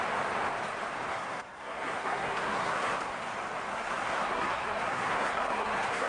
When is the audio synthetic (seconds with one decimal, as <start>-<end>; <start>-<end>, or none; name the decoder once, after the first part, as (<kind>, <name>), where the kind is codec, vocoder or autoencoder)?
1.1-3.1 (codec, SNAC); 3.7-6.1